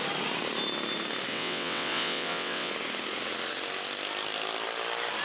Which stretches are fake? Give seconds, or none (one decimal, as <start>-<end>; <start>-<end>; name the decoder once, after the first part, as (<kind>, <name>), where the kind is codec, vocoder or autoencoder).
1.3-2.7 (vocoder, WaveNeXt)